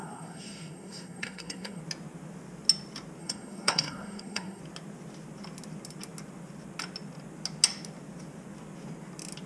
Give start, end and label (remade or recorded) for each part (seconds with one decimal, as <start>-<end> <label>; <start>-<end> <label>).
0.0-1.8 remade; 1.8-3.2 recorded; 3.2-4.6 remade; 4.6-9.5 recorded